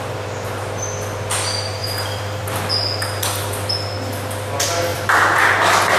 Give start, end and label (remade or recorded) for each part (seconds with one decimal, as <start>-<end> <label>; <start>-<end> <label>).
0.0-1.8 recorded; 1.8-2.6 remade; 2.6-4.9 recorded; 4.9-5.4 remade; 5.4-6.0 recorded